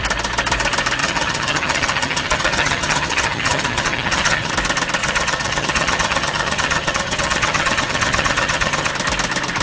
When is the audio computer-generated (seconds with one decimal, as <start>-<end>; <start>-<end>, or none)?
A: 1.0-4.5; 5.0-8.9